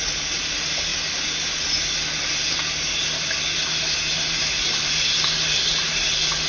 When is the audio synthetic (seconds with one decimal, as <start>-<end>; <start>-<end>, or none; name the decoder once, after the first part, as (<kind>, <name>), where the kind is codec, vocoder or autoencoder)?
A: none